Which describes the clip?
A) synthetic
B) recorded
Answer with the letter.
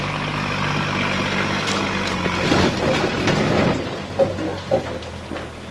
B